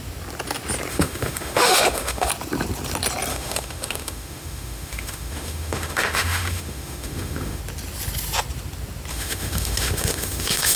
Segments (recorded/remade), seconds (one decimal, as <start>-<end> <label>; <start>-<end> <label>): 0.0-0.9 recorded; 0.9-2.3 remade; 2.3-3.3 recorded; 3.3-7.6 remade; 7.6-9.1 recorded; 9.1-10.8 remade